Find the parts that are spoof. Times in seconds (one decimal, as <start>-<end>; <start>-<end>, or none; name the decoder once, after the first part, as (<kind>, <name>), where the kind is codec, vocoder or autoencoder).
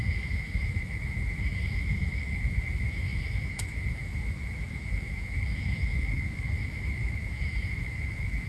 0.0-8.5 (autoencoder, DAC-VAE)